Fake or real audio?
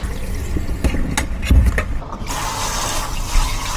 real